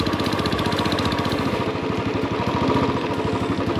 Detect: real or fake real